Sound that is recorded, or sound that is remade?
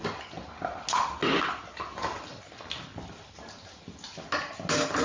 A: recorded